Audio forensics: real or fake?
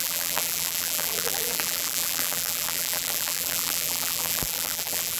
fake